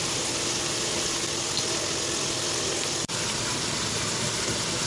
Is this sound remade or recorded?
recorded